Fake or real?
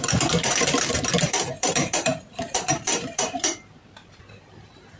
fake